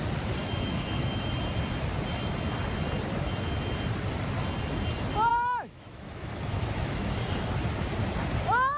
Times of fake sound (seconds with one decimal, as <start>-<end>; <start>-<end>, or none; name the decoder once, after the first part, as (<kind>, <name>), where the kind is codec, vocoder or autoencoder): 0.4-1.3 (autoencoder, DAC-VAE); 5.3-7.2